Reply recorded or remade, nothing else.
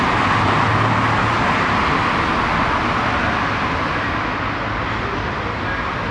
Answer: recorded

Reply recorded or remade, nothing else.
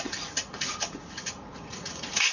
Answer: remade